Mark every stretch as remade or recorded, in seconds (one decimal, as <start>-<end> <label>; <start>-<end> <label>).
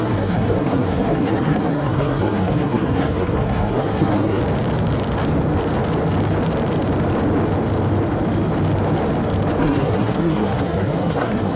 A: 0.0-4.4 remade; 4.4-9.6 recorded; 9.6-11.6 remade